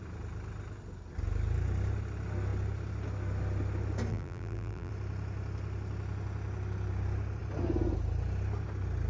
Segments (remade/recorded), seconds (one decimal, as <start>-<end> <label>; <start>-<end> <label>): 0.0-4.1 recorded; 4.1-4.9 remade; 4.9-9.1 recorded